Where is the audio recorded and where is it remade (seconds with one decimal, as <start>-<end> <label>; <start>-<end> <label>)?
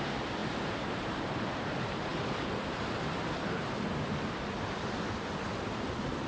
0.0-0.4 remade; 0.4-1.0 recorded; 1.0-6.3 remade